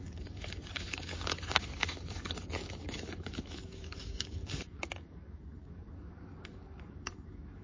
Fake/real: fake